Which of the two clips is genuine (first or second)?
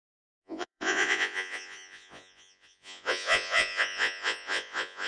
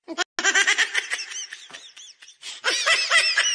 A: second